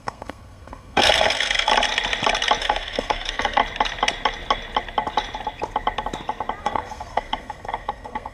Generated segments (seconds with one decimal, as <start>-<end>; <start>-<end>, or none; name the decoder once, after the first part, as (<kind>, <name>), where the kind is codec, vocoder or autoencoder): 0.0-1.7 (codec, SNAC); 2.6-3.6; 6.6-8.3